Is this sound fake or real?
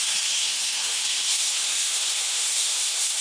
fake